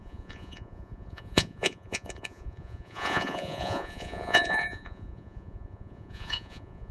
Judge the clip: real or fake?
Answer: fake